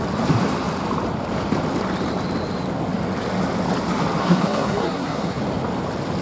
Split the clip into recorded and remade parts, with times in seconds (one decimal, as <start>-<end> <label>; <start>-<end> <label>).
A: 0.0-4.2 recorded; 4.2-5.4 remade; 5.4-6.2 recorded